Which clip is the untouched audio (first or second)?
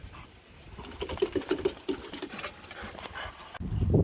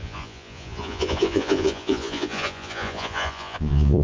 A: first